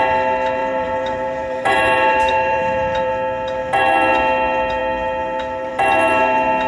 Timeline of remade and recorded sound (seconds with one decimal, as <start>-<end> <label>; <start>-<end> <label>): 0.0-0.6 recorded; 0.6-3.1 remade; 3.1-6.7 recorded